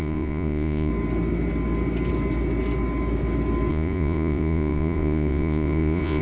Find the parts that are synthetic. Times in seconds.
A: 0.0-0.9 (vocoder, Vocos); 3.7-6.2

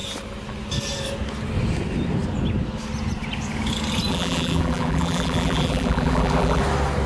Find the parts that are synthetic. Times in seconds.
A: 4.1-6.6 (vocoder, BigVGAN v2)